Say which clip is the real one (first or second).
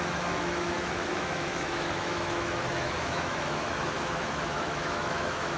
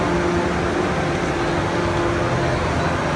second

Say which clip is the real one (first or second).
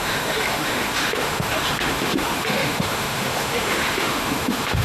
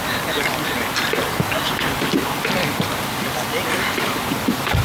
second